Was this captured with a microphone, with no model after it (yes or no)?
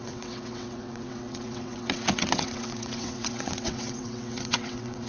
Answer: no